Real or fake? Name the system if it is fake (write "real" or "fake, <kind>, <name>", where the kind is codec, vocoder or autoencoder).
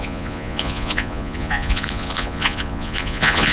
fake, vocoder, Vocos